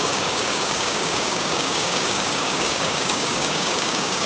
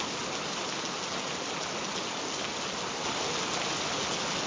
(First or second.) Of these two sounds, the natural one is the second